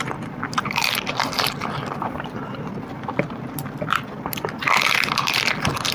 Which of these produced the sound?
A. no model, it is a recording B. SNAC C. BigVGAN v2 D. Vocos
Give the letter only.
C